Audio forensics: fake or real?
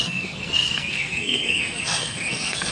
fake